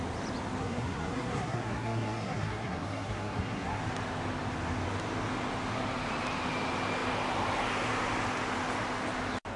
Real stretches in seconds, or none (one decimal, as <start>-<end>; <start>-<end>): 0.0-0.6; 3.8-9.6